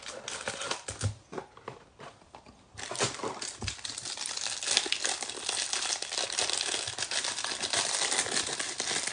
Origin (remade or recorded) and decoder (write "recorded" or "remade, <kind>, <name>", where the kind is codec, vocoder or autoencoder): recorded